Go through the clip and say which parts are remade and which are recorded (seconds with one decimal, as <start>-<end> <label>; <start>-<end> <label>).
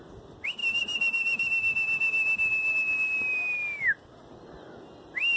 0.0-5.4 recorded